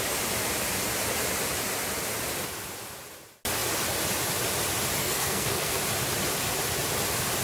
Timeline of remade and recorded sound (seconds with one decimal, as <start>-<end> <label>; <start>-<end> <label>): 0.0-5.0 recorded; 5.0-5.8 remade; 5.8-7.4 recorded